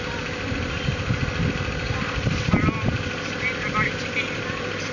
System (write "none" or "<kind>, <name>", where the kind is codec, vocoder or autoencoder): none